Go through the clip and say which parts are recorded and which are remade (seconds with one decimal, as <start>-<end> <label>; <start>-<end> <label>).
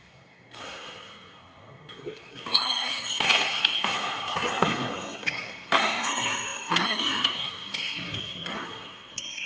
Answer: 0.0-9.5 remade